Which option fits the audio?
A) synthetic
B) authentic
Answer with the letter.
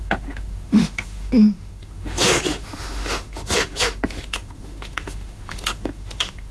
A